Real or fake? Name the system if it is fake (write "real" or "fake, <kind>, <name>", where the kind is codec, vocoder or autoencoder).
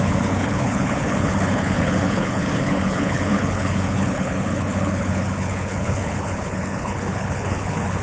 fake, codec, HILCodec